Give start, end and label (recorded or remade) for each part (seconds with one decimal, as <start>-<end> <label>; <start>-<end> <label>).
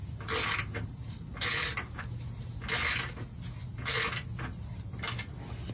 0.0-5.7 recorded